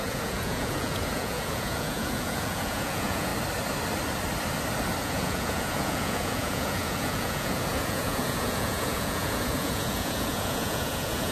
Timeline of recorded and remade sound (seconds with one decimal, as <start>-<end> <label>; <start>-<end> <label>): 0.0-3.3 remade; 3.3-5.0 recorded; 5.0-11.3 remade